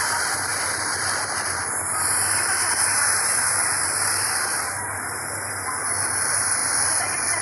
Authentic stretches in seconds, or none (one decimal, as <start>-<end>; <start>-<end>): 0.0-7.4